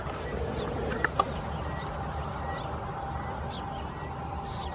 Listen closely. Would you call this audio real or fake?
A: real